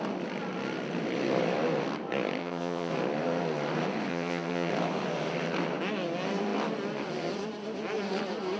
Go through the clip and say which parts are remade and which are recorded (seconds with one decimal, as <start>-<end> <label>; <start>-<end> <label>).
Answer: 0.0-2.4 recorded; 2.4-2.9 remade; 2.9-4.1 recorded; 4.1-4.7 remade; 4.7-8.6 recorded

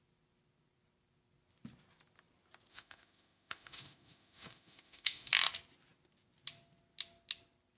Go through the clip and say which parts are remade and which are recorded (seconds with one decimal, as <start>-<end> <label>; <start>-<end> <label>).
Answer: 0.0-2.7 recorded; 2.7-5.3 remade; 5.3-7.8 recorded

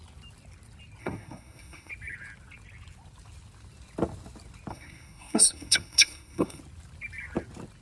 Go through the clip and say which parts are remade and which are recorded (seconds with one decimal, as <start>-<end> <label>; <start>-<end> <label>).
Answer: 0.0-1.0 recorded; 1.0-1.9 remade; 1.9-4.7 recorded; 4.7-6.6 remade; 6.6-7.8 recorded

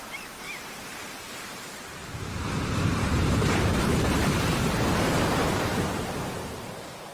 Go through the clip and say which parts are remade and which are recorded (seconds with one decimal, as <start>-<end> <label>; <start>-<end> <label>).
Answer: 0.0-7.1 remade

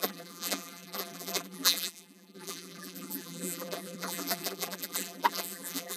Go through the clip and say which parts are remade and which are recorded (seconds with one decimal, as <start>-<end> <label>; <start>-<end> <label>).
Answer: 0.0-6.0 remade